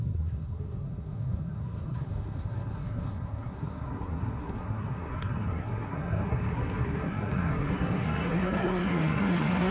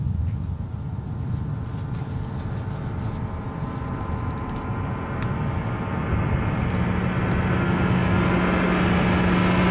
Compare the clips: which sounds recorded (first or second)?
second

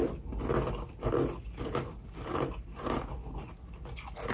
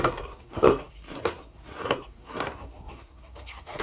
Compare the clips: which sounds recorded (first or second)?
first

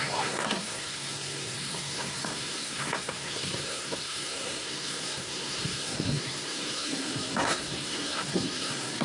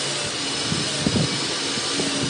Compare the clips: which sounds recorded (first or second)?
second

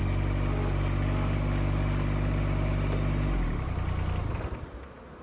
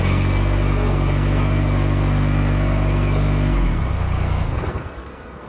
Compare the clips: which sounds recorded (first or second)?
first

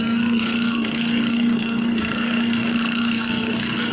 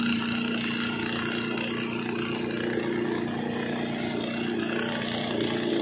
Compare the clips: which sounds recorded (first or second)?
second